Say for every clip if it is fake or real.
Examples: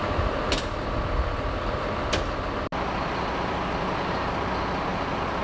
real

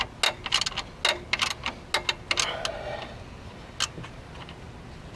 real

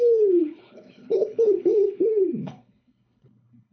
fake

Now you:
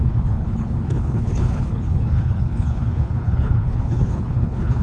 fake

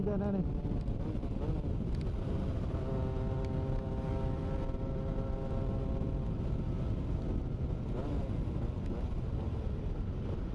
real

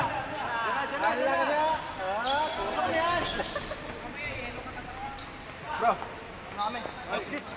real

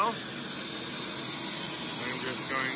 real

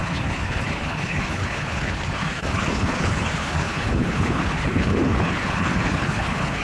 fake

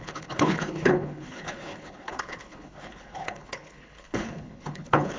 fake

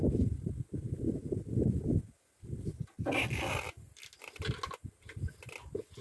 real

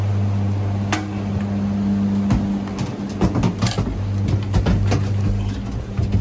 real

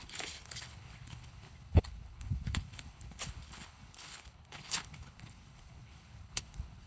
fake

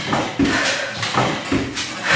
real